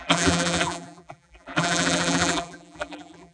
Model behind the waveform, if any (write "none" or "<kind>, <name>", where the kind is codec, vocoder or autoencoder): vocoder, BigVGAN v2